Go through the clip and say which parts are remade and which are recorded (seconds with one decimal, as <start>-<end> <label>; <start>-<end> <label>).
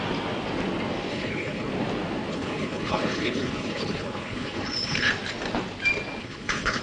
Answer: 0.0-1.1 recorded; 1.1-1.7 remade; 1.7-2.3 recorded; 2.3-5.1 remade; 5.1-6.2 recorded; 6.2-6.8 remade